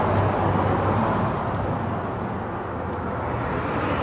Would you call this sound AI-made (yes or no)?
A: no